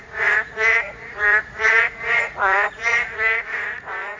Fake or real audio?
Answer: fake